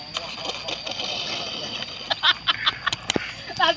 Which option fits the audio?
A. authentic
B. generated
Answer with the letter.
A